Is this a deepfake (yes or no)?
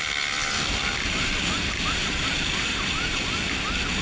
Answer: no